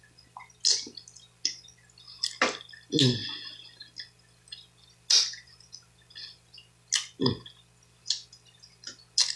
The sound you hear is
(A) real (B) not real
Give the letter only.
A